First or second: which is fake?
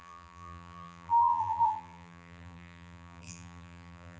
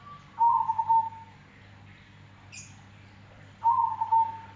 first